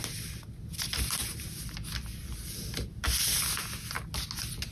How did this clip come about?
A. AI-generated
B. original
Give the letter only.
B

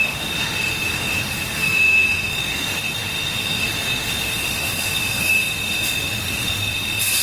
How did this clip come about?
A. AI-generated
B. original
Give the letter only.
A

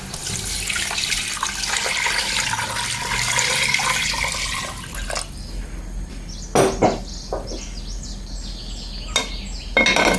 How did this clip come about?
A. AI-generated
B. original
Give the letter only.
B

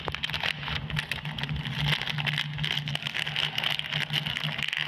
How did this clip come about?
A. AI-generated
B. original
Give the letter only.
B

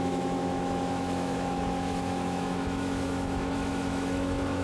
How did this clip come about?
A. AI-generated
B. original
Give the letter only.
A